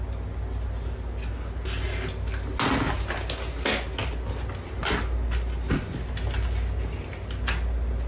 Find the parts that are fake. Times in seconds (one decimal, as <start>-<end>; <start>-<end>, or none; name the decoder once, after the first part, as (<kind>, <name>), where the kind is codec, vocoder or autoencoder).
none